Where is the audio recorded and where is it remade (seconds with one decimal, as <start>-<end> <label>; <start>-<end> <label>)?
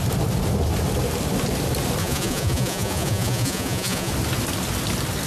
0.0-2.0 recorded; 2.0-4.1 remade; 4.1-5.3 recorded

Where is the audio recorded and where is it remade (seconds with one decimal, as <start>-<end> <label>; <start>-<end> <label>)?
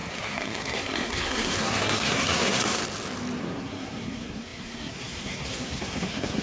0.0-2.8 remade; 2.8-3.4 recorded; 3.4-6.4 remade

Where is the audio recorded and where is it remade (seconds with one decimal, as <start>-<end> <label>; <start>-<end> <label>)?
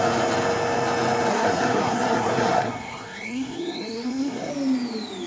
0.0-1.3 recorded; 1.3-4.5 remade; 4.5-5.3 recorded